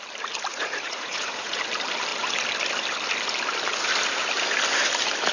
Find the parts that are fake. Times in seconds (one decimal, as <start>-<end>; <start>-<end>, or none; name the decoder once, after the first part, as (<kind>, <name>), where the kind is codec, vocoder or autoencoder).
0.5-1.6 (vocoder, Vocos)